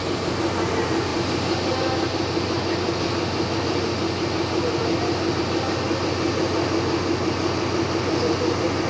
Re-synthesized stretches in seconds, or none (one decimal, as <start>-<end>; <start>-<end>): none